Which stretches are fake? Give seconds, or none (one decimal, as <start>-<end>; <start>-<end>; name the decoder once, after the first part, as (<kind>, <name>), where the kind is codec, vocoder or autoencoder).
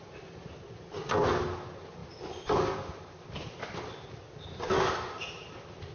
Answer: none